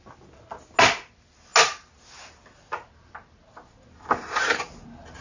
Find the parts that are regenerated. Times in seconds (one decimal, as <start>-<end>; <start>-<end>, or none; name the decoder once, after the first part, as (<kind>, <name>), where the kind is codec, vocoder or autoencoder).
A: none